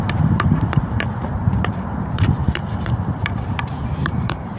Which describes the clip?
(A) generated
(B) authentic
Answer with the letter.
A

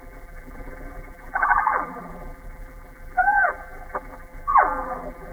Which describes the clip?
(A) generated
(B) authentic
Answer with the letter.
A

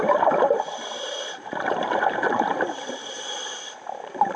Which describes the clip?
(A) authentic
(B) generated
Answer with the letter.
B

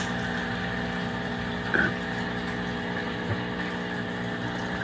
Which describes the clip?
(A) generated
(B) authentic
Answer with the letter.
B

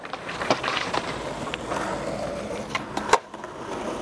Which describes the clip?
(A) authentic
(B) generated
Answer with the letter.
B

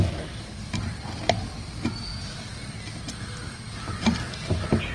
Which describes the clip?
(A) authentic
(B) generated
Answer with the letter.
A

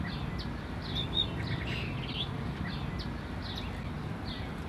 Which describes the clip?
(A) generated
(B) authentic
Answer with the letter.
B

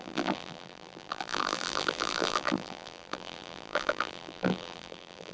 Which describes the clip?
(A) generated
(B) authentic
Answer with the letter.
A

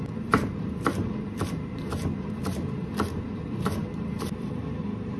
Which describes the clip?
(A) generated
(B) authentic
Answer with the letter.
A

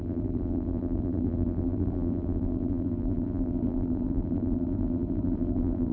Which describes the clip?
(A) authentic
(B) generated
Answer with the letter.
B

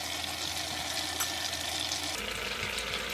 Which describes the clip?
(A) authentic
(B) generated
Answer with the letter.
A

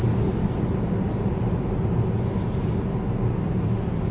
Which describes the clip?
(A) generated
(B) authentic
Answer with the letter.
B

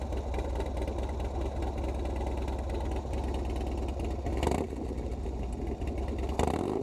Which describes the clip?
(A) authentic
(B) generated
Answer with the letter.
A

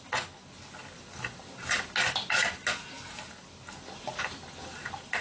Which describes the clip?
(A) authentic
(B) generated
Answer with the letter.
A